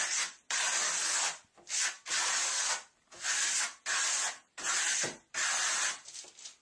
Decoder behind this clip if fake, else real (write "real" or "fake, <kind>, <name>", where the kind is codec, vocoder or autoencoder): real